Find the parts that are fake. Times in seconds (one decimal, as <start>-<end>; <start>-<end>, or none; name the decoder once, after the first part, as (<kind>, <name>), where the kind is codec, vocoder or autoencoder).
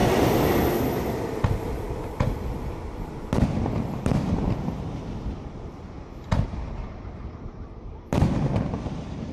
none